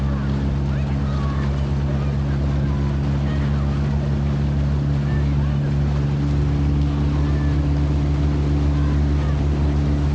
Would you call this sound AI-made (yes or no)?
no